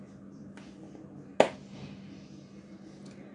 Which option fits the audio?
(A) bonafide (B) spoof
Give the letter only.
A